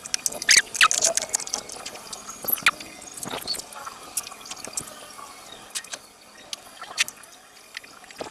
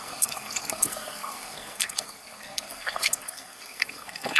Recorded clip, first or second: first